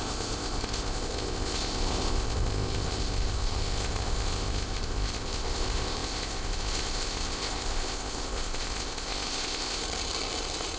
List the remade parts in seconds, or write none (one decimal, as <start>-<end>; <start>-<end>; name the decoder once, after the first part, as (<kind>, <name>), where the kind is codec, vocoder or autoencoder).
0.0-9.8 (codec, ZipCodec)